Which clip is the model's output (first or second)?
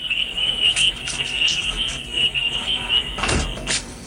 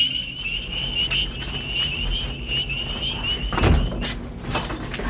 first